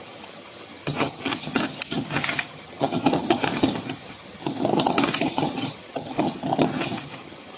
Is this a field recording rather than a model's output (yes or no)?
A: no